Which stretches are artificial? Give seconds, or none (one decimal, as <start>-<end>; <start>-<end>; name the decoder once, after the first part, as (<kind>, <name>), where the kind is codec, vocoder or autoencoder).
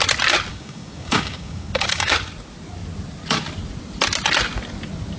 0.5-2.1 (codec, DAC)